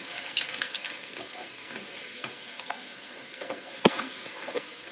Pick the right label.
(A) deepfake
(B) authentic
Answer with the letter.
A